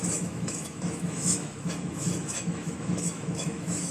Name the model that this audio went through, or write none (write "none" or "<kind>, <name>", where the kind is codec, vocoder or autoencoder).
autoencoder, DAC-VAE